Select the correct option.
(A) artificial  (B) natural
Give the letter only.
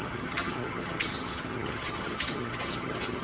A